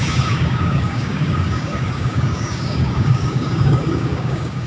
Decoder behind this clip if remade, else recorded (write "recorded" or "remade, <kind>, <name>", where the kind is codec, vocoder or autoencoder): remade, codec, DAC